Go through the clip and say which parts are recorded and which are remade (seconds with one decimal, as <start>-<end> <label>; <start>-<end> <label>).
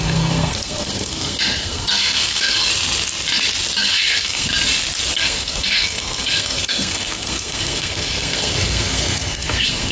0.0-2.7 remade; 2.7-3.8 recorded; 3.8-4.5 remade; 4.5-5.1 recorded; 5.1-9.9 remade